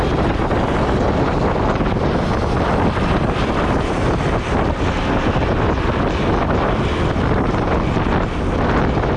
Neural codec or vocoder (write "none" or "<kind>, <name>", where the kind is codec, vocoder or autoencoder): none